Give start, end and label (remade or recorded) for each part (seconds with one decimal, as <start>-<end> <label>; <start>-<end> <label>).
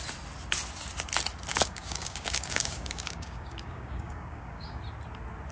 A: 0.0-1.5 recorded; 1.5-4.8 remade; 4.8-5.5 recorded